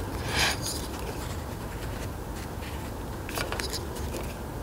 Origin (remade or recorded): remade